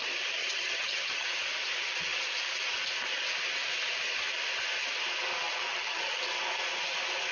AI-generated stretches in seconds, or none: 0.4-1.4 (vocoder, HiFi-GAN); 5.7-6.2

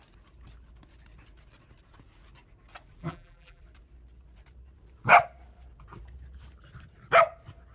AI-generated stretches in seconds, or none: 3.0-3.6 (vocoder, BigVGAN v2)

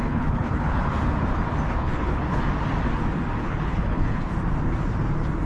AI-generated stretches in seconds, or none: 0.0-0.8 (codec, HILCodec); 1.7-2.4; 3.4-4.3

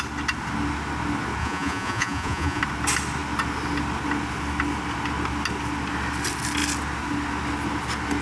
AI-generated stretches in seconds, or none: 1.4-2.6 (vocoder, Vocos)

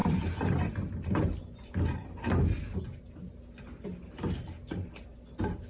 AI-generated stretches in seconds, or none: none

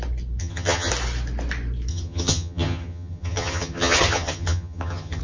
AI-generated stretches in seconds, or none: 0.4-0.9 (vocoder, HiFi-GAN); 1.9-5.2